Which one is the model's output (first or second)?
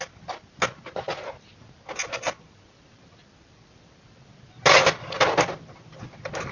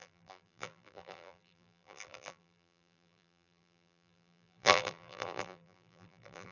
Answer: second